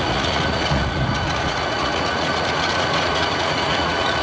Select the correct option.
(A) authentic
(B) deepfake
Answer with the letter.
B